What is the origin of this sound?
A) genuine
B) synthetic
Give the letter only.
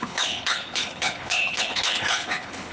B